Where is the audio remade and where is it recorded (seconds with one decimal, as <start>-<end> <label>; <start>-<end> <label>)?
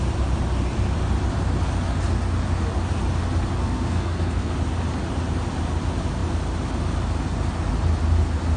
0.0-3.6 recorded; 3.6-4.5 remade; 4.5-8.6 recorded